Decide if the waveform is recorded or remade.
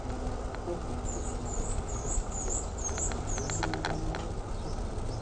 recorded